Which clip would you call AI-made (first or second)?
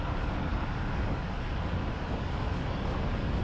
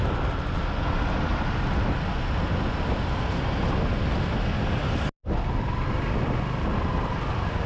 first